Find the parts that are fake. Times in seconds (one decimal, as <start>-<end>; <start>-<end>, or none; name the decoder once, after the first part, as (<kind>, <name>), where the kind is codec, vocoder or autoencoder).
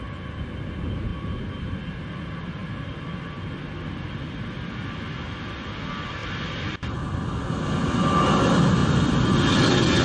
1.1-2.0 (vocoder, BigVGAN v2); 6.2-7.0; 8.8-10.0